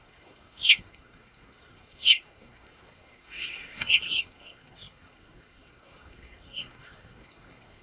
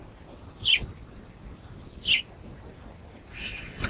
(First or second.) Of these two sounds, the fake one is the first